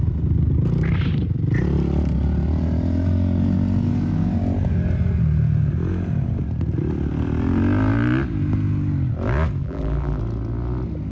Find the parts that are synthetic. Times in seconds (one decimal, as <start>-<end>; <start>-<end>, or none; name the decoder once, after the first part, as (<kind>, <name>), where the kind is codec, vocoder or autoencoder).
9.6-10.2 (vocoder, BigVGAN v2)